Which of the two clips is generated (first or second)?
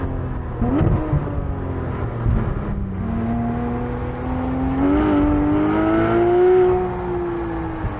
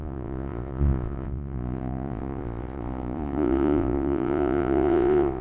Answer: second